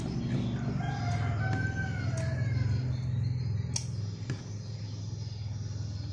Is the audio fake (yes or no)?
no